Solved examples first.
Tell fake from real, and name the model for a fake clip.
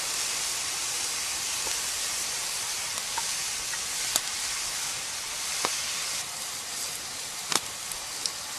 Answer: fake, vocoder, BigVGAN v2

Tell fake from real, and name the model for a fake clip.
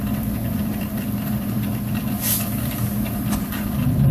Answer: fake, vocoder, BigVGAN v2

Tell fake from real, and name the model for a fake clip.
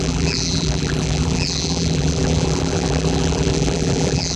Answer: fake, vocoder, BigVGAN v2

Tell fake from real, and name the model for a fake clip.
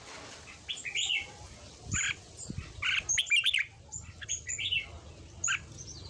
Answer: real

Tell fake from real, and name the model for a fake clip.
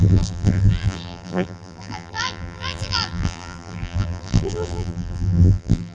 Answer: fake, vocoder, BigVGAN v2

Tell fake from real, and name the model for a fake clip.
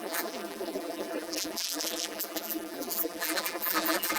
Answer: fake, vocoder, BigVGAN v2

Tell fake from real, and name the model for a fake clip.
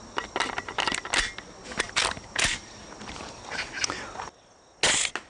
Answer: real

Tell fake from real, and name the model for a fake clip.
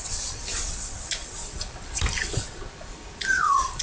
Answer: fake, vocoder, BigVGAN v2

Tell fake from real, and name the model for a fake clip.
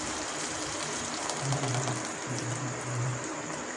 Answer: fake, vocoder, BigVGAN v2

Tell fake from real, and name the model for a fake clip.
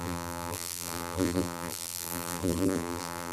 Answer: fake, vocoder, BigVGAN v2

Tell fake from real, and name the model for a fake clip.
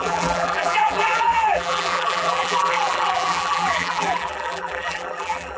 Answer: fake, vocoder, BigVGAN v2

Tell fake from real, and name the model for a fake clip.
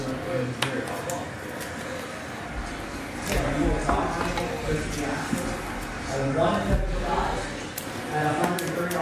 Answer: real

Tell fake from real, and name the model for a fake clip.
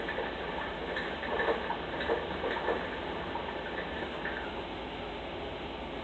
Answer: real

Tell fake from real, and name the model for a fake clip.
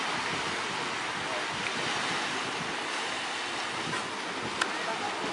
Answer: real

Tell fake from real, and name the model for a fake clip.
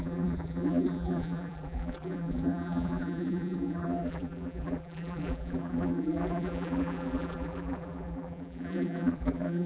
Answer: fake, vocoder, BigVGAN v2